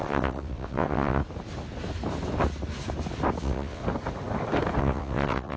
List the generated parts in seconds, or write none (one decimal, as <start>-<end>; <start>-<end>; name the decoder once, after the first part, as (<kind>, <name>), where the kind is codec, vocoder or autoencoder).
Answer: 0.0-1.2 (vocoder, WaveNeXt); 3.4-3.8; 4.8-5.6